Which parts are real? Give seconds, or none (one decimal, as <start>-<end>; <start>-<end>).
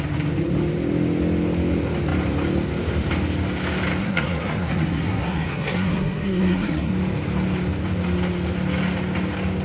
0.0-4.0; 6.9-9.6